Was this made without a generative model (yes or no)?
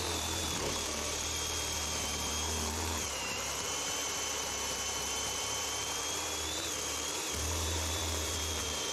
no